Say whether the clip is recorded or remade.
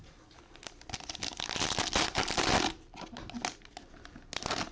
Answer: recorded